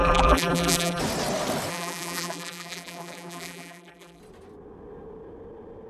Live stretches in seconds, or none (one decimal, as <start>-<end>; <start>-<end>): 1.0-1.7; 4.2-5.9